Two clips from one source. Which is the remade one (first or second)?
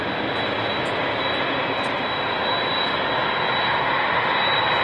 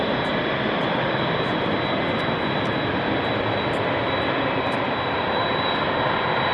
second